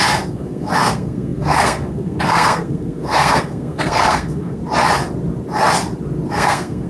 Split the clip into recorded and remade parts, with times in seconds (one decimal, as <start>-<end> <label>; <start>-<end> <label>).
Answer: 0.0-4.6 remade; 4.6-6.3 recorded; 6.3-6.9 remade